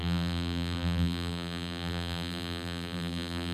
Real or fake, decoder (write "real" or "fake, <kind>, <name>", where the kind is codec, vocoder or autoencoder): fake, vocoder, BigVGAN v2